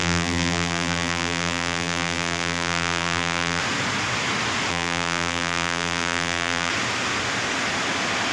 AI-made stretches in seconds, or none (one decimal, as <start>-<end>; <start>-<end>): 0.0-3.6; 4.7-6.7